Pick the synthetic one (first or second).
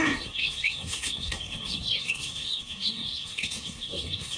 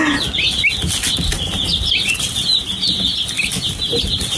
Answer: first